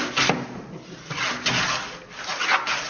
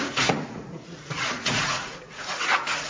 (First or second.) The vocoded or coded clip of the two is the second